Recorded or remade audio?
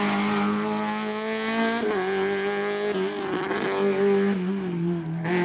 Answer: recorded